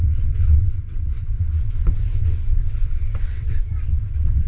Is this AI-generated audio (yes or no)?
yes